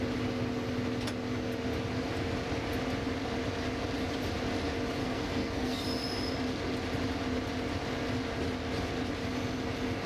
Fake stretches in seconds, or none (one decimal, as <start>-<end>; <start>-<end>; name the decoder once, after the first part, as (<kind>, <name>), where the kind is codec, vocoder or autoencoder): 5.0-5.8 (codec, SNAC)